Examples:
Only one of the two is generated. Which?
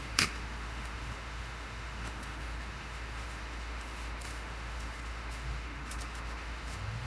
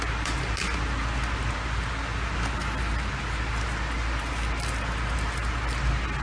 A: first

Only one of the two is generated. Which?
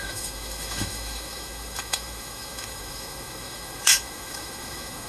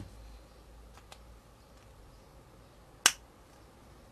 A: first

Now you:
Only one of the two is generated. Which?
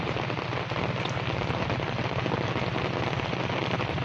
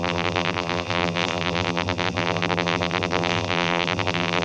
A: second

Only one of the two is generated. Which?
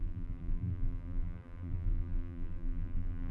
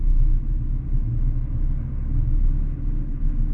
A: first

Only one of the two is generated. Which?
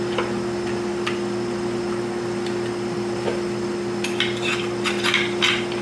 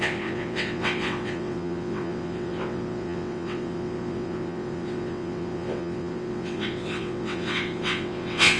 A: second